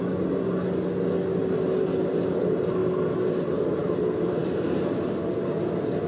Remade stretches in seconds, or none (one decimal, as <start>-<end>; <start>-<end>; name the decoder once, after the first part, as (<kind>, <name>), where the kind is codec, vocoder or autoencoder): none